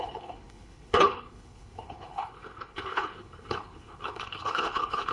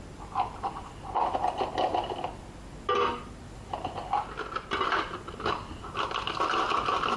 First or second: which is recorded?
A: second